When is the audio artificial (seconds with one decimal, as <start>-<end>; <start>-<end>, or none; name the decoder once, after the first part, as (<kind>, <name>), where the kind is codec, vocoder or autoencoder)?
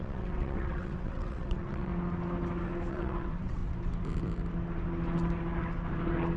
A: 0.0-1.9 (vocoder, WaveNeXt); 2.9-3.6